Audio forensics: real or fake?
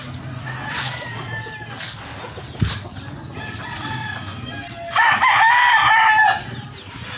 real